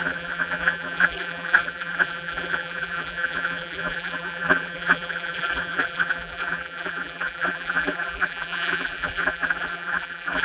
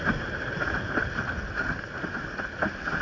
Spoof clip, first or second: first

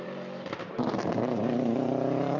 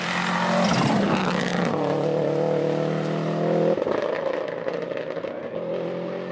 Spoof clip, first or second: first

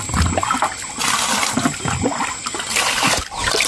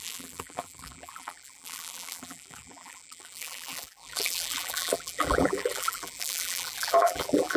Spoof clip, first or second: second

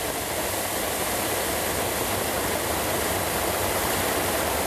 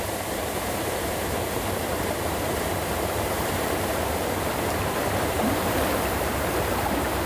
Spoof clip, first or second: second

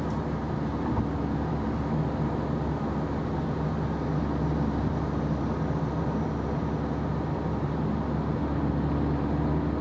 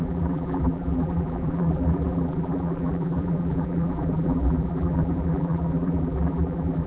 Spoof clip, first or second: second